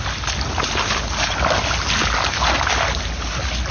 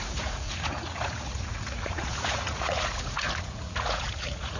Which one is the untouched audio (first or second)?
first